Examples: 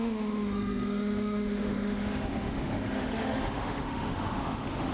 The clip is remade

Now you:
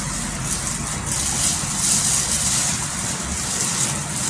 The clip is recorded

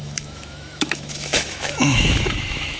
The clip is remade